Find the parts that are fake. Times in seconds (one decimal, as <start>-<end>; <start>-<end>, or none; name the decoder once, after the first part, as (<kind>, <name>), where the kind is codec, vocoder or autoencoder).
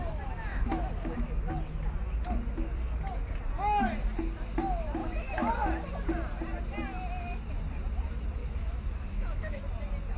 0.5-1.2 (autoencoder, DAC-VAE); 5.0-5.5; 8.4-9.6